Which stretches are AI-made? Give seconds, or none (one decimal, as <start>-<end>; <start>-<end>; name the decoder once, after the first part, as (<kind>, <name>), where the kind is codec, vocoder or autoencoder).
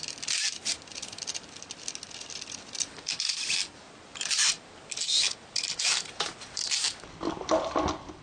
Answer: none